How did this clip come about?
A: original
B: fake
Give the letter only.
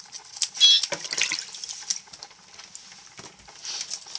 A